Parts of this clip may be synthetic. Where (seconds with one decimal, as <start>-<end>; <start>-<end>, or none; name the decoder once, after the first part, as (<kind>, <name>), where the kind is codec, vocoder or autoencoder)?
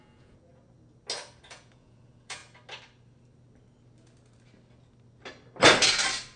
0.0-0.5 (vocoder, Vocos); 1.5-2.4